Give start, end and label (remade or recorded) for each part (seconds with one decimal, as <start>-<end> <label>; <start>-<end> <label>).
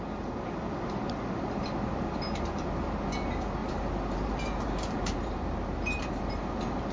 0.0-3.6 recorded; 3.6-6.5 remade; 6.5-6.9 recorded